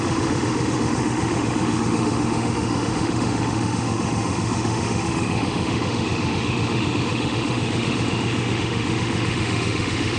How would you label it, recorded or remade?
remade